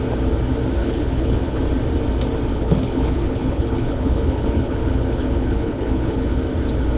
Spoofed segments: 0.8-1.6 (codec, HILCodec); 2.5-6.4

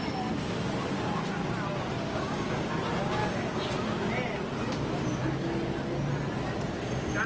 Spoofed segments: 2.1-2.7 (codec, DAC); 3.2-3.7

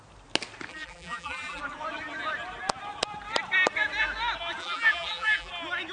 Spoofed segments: 0.7-1.6 (vocoder, BigVGAN v2); 4.6-5.5

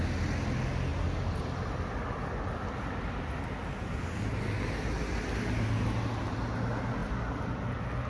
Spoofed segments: none

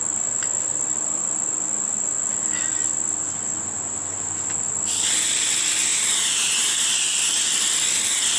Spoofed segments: 5.9-6.6 (vocoder, BigVGAN v2)

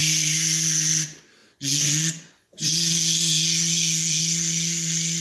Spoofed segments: 1.4-4.2 (vocoder, Vocos)

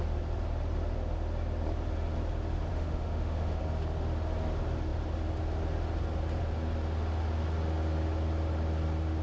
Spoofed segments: 2.7-3.6 (autoencoder, DAC-VAE)